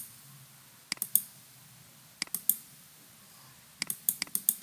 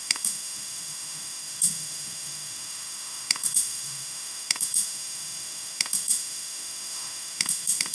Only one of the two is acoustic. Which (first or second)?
first